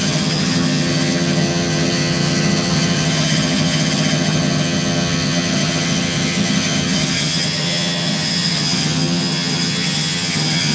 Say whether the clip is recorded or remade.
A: remade